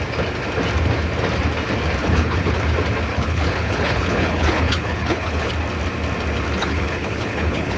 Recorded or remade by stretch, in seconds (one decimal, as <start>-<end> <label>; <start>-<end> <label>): 0.0-2.0 recorded; 2.0-2.6 remade; 2.6-3.1 recorded; 3.1-5.5 remade; 5.5-6.6 recorded; 6.6-7.8 remade